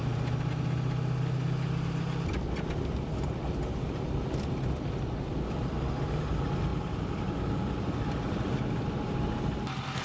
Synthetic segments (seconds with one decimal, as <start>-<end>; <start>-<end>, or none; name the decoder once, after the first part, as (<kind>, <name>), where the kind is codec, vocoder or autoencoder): none